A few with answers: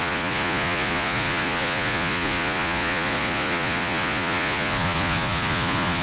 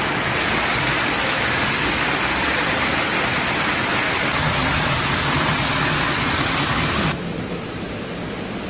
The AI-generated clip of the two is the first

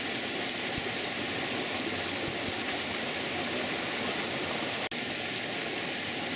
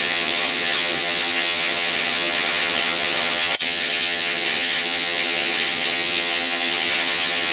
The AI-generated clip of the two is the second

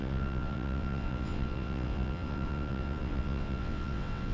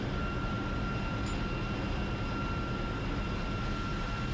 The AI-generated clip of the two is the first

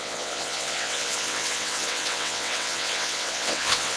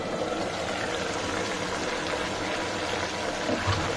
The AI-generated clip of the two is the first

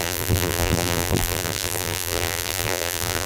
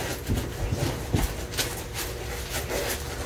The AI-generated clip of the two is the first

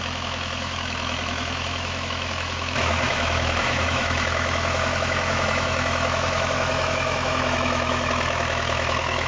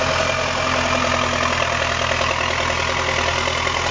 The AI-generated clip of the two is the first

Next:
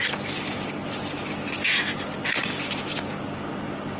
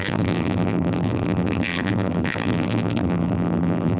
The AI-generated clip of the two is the second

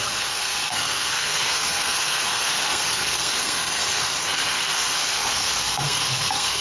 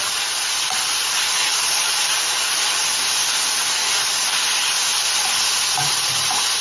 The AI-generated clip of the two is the first